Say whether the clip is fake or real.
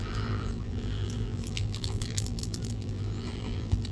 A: fake